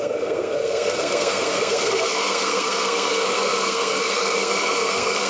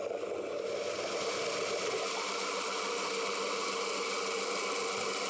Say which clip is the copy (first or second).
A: first